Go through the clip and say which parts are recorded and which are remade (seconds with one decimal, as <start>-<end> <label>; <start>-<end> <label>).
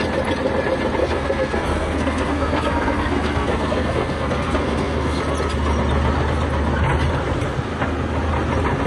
0.0-1.0 recorded; 1.0-5.2 remade; 5.2-8.9 recorded